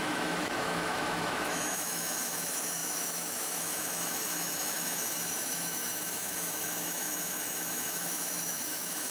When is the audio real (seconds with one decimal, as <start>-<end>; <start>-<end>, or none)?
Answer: none

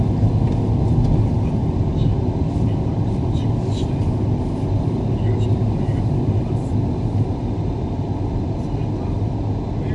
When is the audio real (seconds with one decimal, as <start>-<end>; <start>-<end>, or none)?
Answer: 0.0-9.9